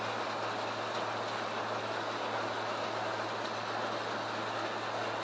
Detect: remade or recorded recorded